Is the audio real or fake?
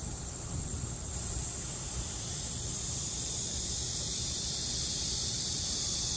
fake